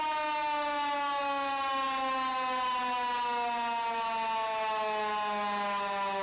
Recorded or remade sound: recorded